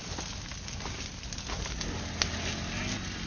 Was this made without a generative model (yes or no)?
yes